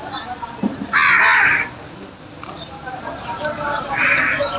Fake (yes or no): no